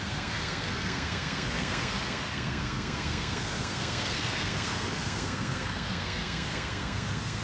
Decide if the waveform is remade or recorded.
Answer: remade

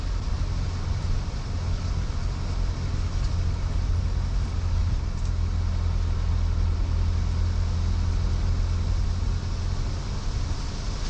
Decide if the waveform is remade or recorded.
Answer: recorded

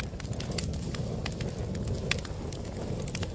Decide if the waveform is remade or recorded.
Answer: recorded